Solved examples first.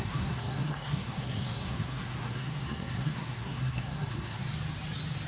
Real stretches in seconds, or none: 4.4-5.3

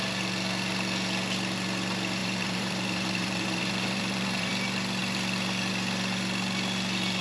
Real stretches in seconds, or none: 0.0-2.2; 4.5-7.2

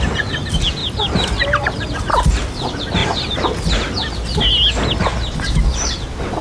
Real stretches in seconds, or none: 0.0-6.4

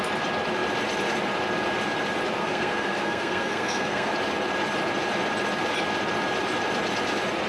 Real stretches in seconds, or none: 0.0-2.4; 4.1-7.5

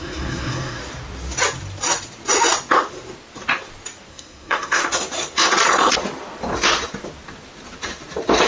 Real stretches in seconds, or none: 0.8-4.1; 4.8-8.5

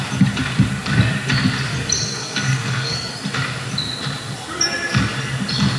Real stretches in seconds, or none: 0.0-2.2; 3.1-5.8

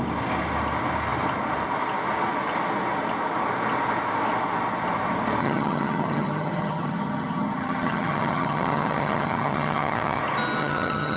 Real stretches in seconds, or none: 0.0-5.4; 10.2-10.6

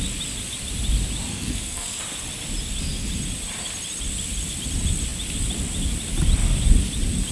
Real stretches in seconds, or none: 0.0-1.3; 2.0-7.3